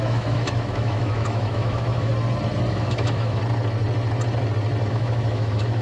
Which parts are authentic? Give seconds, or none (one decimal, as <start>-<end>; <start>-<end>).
2.1-2.7; 3.4-4.9